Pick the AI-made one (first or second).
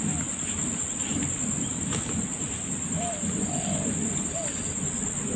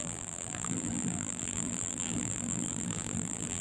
second